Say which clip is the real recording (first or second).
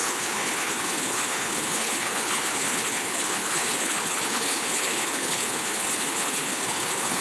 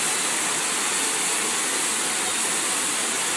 second